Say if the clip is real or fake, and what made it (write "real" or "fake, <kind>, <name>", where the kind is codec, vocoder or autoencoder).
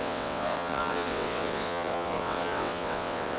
fake, vocoder, WaveNeXt